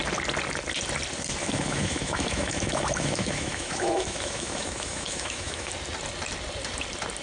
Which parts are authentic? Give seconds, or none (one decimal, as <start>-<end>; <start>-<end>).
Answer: 0.0-1.4; 5.7-7.2